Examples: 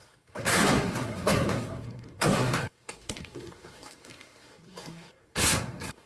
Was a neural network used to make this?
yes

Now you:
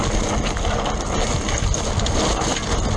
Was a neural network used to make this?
no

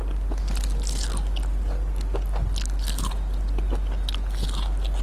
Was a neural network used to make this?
no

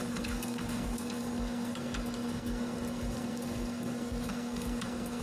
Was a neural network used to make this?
yes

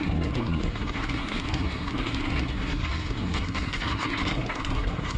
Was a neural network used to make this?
yes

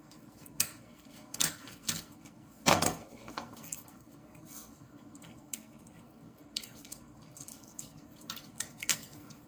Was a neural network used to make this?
yes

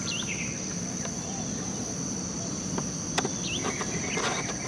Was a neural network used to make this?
no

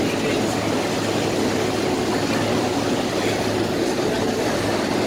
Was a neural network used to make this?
no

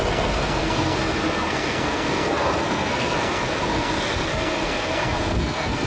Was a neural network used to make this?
yes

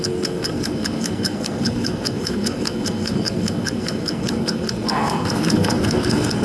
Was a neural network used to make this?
yes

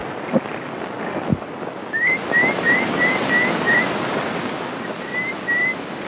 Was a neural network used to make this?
no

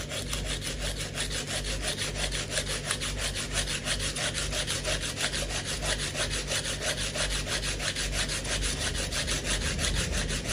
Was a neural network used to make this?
no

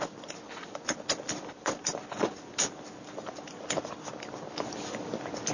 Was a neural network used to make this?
no